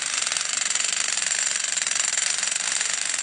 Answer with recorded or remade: remade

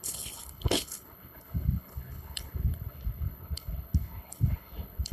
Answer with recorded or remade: remade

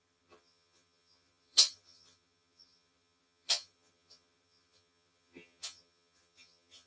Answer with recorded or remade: remade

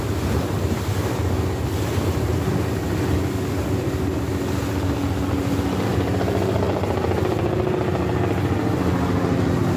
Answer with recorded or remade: recorded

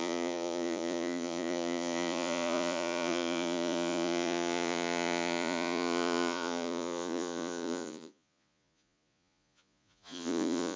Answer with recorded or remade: remade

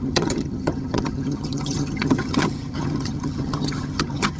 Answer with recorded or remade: remade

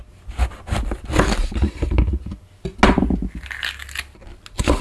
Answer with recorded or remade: recorded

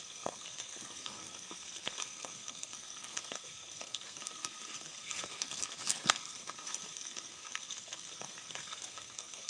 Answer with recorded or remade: remade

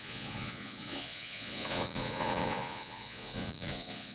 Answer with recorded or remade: remade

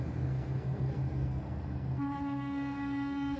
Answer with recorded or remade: remade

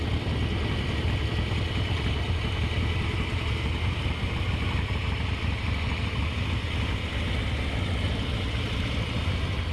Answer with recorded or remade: remade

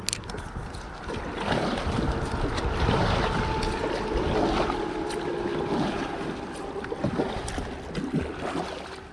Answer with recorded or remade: recorded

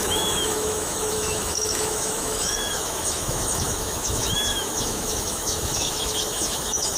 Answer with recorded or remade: remade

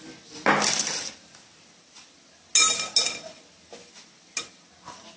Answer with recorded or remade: recorded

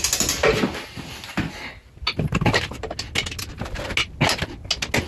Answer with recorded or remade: recorded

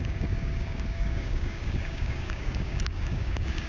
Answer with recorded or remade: remade